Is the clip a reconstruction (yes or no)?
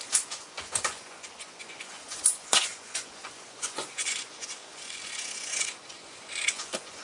yes